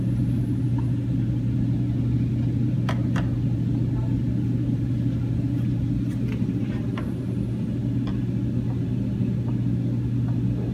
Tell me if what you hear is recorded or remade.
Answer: recorded